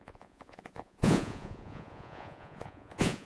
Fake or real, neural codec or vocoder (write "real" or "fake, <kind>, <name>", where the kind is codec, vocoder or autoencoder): fake, vocoder, Vocos